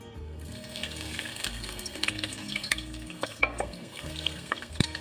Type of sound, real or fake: fake